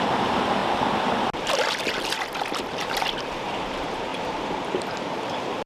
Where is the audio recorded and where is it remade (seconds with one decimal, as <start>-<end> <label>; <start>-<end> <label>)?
0.0-0.6 remade; 0.6-2.6 recorded; 2.6-5.7 remade